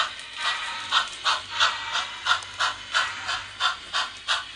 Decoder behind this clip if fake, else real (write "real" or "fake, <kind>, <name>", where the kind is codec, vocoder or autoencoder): real